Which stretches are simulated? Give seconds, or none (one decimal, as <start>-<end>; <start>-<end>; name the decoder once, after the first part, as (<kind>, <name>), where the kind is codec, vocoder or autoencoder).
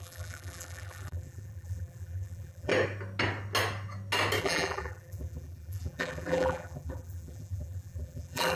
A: 0.0-2.7 (vocoder, BigVGAN v2); 4.4-8.6